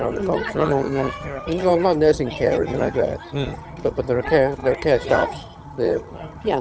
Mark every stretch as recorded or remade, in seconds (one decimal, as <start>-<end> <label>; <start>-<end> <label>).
0.0-6.6 remade